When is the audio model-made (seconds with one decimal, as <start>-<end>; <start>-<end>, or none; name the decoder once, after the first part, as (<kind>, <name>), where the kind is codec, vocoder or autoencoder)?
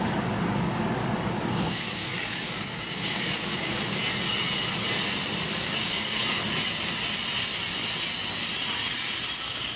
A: 0.0-4.0 (codec, DAC); 5.5-6.2; 9.4-9.8